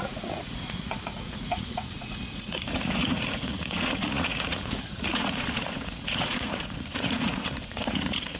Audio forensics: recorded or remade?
remade